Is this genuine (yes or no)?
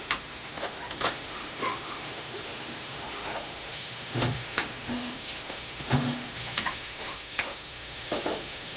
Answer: no